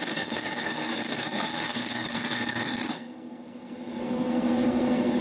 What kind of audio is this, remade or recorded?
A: remade